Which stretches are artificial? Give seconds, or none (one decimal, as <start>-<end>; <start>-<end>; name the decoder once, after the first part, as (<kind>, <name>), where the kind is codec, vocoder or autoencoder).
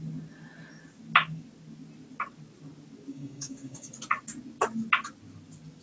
3.1-3.9 (codec, DAC)